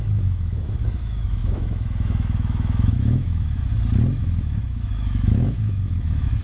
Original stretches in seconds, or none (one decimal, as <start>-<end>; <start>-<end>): 3.6-4.2